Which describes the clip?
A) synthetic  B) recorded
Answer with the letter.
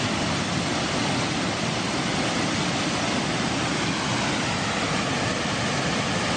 B